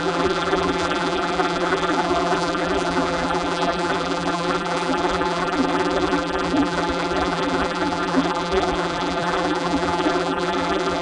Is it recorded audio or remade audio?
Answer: remade